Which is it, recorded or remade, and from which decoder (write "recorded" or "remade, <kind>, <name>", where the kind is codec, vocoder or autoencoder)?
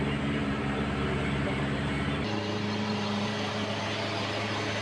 remade, vocoder, BigVGAN v2